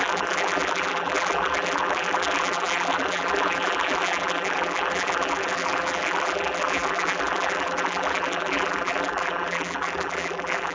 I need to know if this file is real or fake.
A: fake